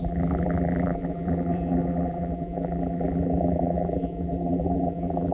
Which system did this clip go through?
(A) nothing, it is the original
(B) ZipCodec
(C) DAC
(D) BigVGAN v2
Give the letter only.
D